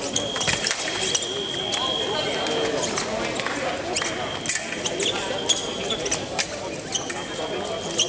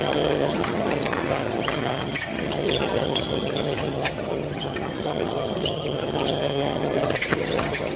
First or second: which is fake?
second